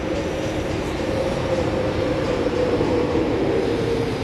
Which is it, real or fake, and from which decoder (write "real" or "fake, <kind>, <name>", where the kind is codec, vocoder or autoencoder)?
fake, vocoder, BigVGAN v2